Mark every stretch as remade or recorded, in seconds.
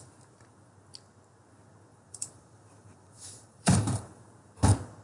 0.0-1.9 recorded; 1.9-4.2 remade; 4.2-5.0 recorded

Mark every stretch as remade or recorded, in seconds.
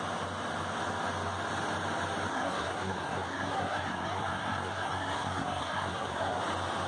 0.0-2.3 recorded; 2.3-6.4 remade; 6.4-6.9 recorded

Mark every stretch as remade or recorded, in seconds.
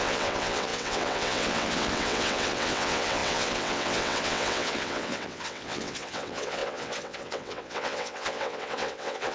0.0-9.3 remade